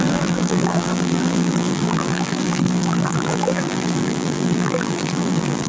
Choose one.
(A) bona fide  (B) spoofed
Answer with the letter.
B